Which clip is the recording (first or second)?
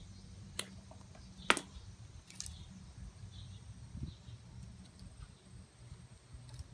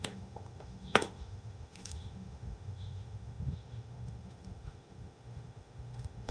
first